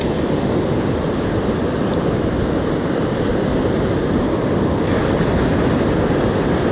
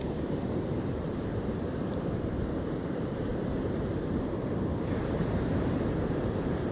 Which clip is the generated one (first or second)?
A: second